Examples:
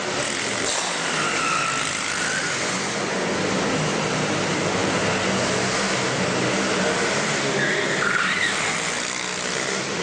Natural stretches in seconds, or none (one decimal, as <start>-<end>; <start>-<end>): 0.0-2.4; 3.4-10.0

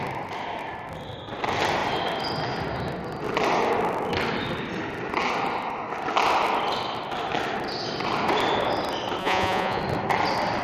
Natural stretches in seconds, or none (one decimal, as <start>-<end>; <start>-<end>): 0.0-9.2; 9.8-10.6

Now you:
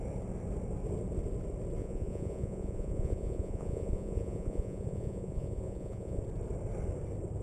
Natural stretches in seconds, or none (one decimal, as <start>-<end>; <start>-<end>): 0.0-1.8; 6.2-7.4

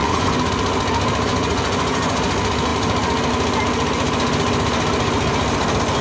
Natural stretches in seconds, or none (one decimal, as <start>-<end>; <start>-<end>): 0.5-1.3; 2.2-6.0

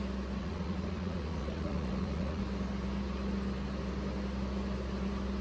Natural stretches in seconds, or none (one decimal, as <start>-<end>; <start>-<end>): 0.0-0.4; 2.4-5.4

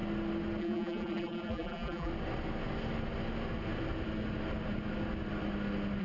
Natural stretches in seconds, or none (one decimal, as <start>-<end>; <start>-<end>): 0.0-0.6; 2.1-6.0

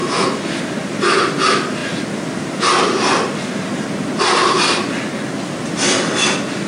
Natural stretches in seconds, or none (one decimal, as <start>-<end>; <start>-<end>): 0.6-6.7